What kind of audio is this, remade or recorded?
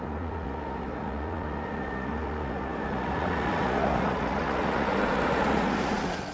remade